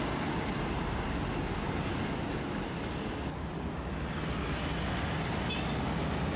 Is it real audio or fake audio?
real